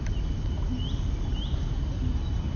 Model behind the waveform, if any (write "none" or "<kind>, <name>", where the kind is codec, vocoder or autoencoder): none